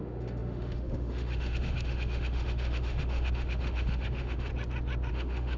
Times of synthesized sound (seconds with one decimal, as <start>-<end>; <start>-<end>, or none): 0.0-4.5; 5.1-5.6